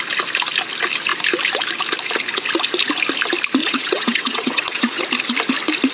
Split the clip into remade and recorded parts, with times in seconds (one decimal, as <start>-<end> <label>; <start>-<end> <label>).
0.0-3.6 recorded; 3.6-5.0 remade; 5.0-5.9 recorded